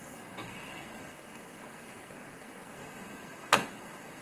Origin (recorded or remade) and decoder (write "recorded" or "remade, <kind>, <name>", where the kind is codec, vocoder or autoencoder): remade, codec, SNAC